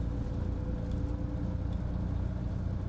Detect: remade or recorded recorded